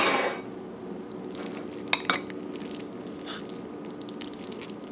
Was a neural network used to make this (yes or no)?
no